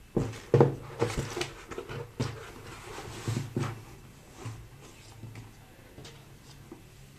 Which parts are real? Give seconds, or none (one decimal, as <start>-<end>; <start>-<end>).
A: 0.0-7.2